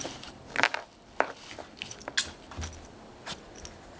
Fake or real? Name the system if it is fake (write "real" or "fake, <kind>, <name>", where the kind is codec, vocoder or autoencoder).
real